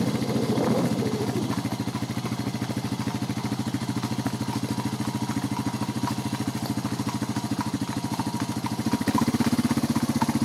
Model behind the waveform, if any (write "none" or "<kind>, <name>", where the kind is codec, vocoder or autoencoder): none